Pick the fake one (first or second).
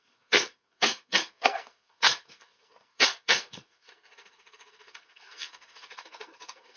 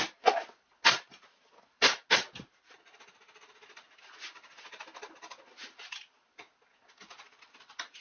first